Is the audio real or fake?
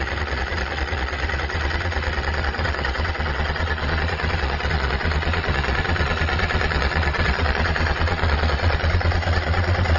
fake